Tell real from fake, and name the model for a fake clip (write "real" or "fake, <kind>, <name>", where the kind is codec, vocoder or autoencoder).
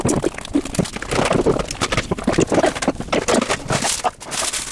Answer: real